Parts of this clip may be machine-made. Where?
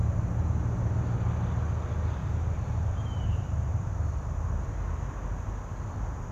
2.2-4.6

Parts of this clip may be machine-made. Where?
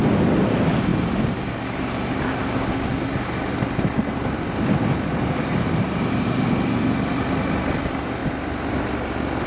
0.0-0.9; 5.2-8.2; 8.7-9.5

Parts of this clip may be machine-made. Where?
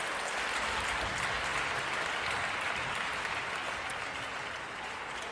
none